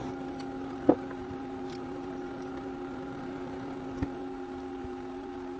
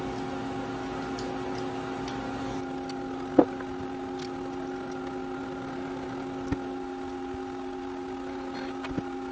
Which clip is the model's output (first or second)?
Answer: first